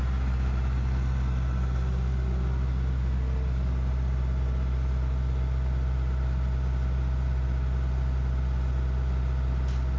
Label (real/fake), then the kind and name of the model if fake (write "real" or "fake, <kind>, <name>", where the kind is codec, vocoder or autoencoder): real